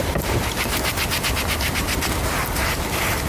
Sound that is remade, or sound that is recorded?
remade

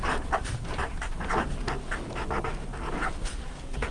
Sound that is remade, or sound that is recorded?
recorded